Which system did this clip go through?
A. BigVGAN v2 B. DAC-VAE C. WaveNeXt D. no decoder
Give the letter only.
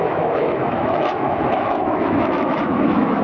B